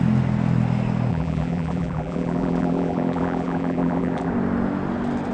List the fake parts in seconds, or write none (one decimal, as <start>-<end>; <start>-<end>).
1.1-4.3